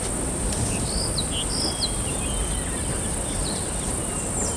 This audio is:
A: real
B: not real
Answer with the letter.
A